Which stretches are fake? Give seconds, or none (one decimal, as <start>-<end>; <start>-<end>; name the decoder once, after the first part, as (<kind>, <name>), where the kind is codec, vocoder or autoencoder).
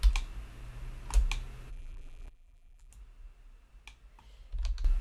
1.7-2.9 (vocoder, BigVGAN v2)